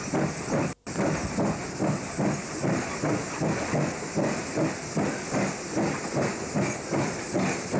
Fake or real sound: real